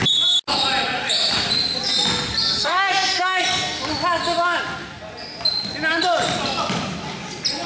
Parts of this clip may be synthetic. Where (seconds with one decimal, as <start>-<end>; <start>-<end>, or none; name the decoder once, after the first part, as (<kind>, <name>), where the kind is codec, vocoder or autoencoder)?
2.6-3.4 (codec, SNAC)